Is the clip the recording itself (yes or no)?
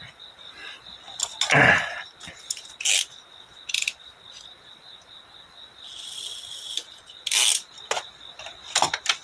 yes